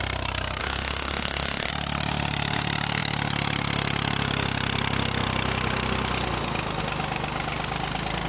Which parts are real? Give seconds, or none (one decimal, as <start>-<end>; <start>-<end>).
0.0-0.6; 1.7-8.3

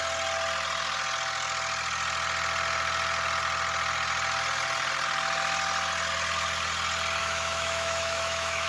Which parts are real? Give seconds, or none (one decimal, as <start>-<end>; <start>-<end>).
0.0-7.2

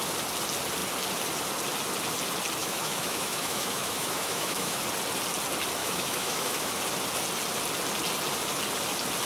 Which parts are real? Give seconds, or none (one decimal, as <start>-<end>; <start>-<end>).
0.0-2.6; 4.8-5.8; 6.8-9.3

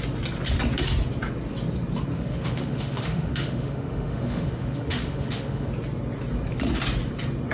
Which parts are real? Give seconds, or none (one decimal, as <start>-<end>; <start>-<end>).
0.0-2.1; 5.7-7.5

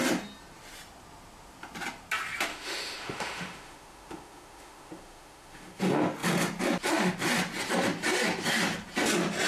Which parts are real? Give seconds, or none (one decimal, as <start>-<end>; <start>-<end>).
0.0-2.5; 5.8-9.5

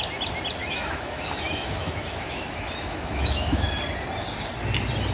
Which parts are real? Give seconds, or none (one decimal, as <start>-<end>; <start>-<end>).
0.0-0.6; 3.7-5.1